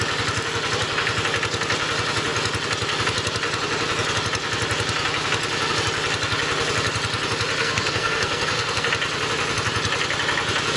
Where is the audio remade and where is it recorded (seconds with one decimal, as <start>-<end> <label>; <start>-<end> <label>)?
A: 0.0-7.6 recorded; 7.6-8.9 remade; 8.9-10.8 recorded